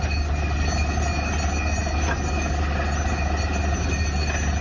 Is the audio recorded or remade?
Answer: recorded